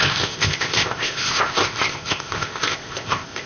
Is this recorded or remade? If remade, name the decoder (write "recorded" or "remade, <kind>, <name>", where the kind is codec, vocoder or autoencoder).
remade, codec, ZipCodec